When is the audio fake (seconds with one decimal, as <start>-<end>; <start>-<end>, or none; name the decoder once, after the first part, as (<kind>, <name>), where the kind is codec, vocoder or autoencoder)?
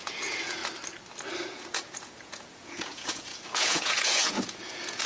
0.0-0.6 (vocoder, Vocos); 1.5-5.1